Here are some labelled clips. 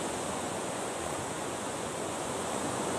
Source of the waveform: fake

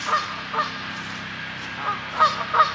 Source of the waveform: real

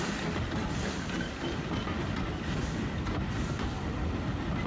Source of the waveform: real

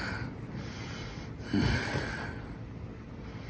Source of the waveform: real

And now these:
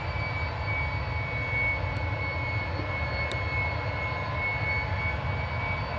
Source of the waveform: real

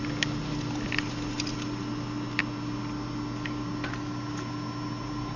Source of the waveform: real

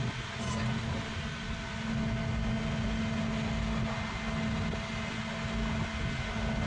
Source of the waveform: real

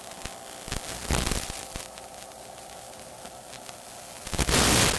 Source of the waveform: real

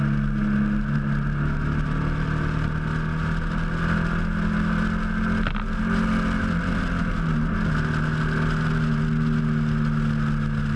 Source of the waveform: real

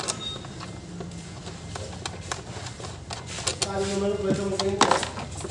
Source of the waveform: real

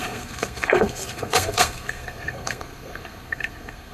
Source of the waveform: fake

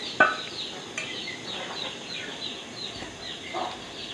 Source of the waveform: real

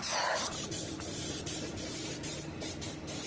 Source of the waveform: fake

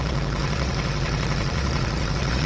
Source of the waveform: fake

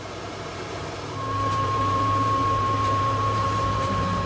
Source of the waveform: fake